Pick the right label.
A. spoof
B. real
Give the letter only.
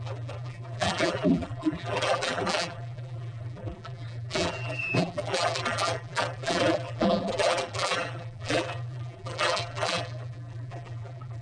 A